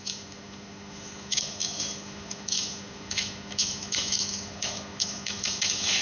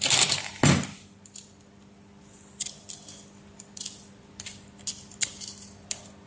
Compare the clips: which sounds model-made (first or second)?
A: first